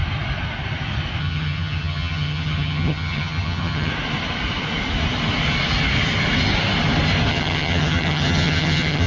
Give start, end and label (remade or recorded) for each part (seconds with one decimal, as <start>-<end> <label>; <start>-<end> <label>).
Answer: 0.0-1.2 recorded; 1.2-3.9 remade; 3.9-7.3 recorded; 7.3-9.1 remade